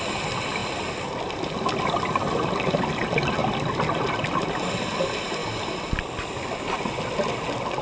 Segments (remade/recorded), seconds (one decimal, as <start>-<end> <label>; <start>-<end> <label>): 0.0-7.8 recorded